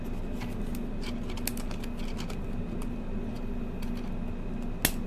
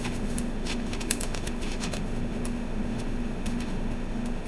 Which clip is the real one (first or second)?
first